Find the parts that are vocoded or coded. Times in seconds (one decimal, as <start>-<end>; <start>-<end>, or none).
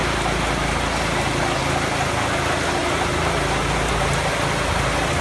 none